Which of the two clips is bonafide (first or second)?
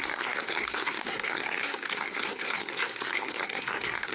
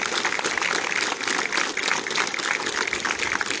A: second